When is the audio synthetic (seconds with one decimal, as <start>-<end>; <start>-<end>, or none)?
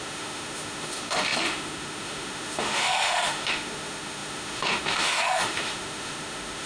0.0-6.7